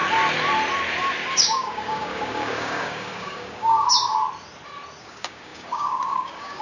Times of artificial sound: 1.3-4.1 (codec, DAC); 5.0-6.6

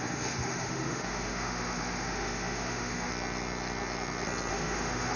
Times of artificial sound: 0.0-3.1 (autoencoder, DAC-VAE); 4.5-5.2

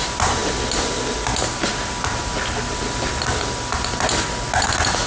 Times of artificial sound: none

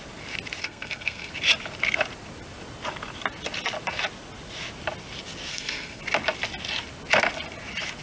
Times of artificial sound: 0.6-1.3 (codec, SNAC); 5.5-6.0